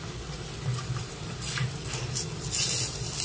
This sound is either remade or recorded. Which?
recorded